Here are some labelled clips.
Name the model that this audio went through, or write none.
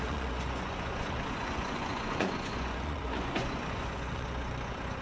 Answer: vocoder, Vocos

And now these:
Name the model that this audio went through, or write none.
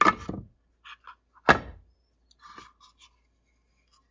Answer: none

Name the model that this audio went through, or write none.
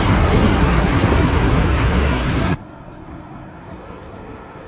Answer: codec, SNAC